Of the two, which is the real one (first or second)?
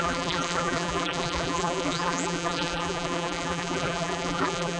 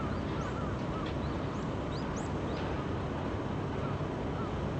second